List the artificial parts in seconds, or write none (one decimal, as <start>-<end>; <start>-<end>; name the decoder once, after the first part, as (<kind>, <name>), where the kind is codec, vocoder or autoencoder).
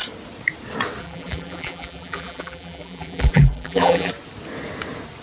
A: 1.0-4.1 (vocoder, BigVGAN v2)